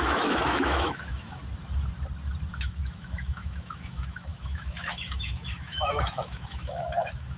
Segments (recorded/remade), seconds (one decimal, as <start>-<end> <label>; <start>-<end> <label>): 0.0-1.4 remade; 1.4-2.5 recorded; 2.5-7.4 remade